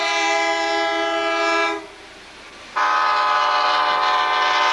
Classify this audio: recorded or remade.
recorded